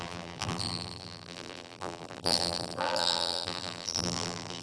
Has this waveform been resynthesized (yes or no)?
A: yes